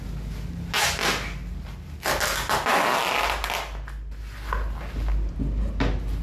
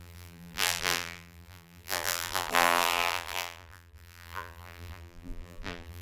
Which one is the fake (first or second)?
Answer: second